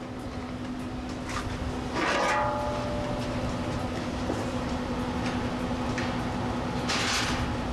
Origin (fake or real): real